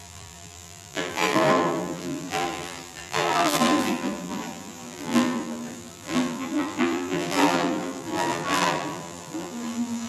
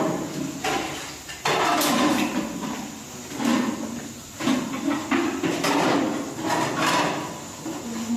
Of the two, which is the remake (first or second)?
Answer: first